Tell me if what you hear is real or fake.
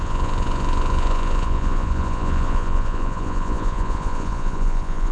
fake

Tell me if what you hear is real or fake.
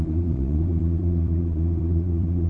fake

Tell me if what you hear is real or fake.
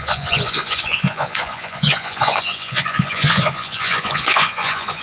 fake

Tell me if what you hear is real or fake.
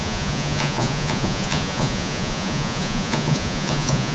fake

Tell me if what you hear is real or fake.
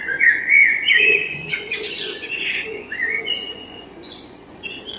fake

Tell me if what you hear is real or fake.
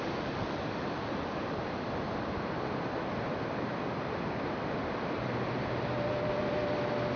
real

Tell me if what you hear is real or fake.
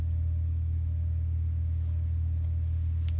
real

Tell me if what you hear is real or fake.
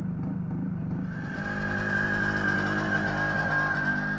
real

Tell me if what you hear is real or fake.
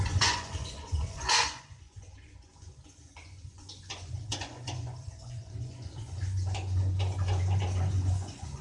fake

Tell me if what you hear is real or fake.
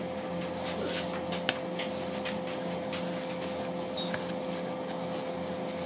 real